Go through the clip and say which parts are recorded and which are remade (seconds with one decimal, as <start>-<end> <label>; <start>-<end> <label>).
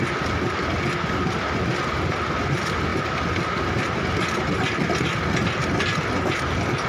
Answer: 0.0-6.9 recorded